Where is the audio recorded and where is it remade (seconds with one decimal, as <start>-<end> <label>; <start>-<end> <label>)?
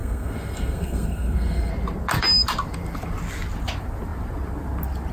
0.0-1.7 remade; 1.7-5.1 recorded